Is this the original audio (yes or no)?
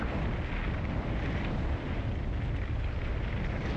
yes